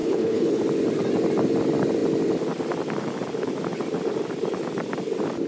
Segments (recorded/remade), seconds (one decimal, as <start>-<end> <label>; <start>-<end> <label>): 0.0-0.6 remade; 0.6-5.5 recorded